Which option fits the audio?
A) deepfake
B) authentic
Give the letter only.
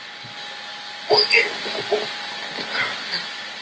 B